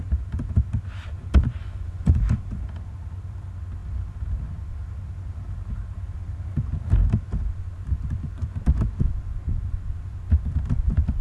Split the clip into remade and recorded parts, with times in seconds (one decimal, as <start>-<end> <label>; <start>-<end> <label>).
0.0-1.6 recorded; 1.6-2.2 remade; 2.2-11.2 recorded